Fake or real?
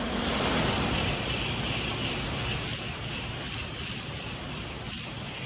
real